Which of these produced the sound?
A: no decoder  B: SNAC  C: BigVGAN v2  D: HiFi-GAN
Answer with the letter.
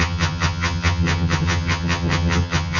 D